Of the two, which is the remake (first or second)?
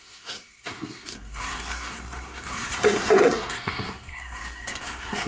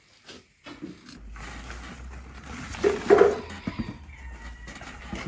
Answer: first